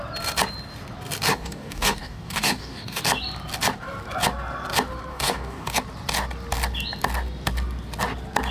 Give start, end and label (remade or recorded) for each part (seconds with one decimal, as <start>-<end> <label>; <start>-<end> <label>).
0.0-1.3 recorded; 1.3-3.0 remade; 3.0-5.1 recorded; 5.1-5.8 remade; 5.8-8.5 recorded

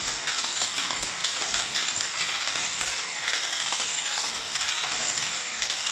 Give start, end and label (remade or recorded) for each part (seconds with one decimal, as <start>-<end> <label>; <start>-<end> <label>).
0.0-5.9 remade